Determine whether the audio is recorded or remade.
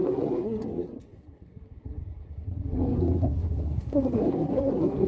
remade